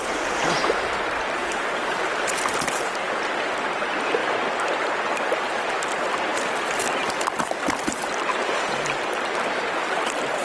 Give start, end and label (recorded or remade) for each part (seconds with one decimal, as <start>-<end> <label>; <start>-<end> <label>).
0.0-1.4 recorded; 1.4-2.7 remade; 2.7-8.3 recorded; 8.3-10.0 remade; 10.0-10.4 recorded